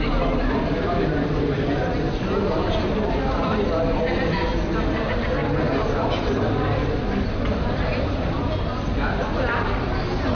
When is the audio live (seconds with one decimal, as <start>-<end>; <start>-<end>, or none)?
0.0-10.3